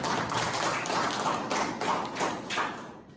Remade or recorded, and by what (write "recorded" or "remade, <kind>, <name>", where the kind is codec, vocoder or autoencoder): recorded